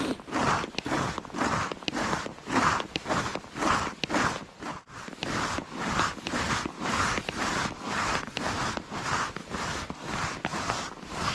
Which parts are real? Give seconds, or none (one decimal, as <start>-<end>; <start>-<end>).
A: 0.0-11.3